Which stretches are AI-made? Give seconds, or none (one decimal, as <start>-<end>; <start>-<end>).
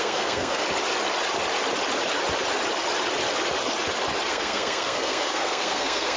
0.0-0.6; 4.3-6.2